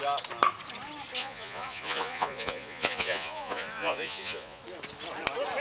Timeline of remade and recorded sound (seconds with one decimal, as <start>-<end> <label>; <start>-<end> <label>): 0.0-1.2 recorded; 1.2-4.6 remade; 4.6-5.6 recorded